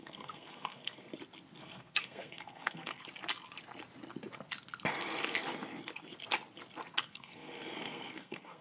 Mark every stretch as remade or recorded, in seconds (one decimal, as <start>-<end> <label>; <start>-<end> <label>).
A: 0.0-1.1 remade; 1.1-1.6 recorded; 1.6-3.0 remade; 3.0-7.0 recorded; 7.0-8.6 remade